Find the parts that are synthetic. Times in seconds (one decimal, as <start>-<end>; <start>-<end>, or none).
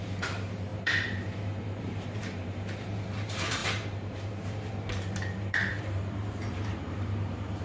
0.0-7.6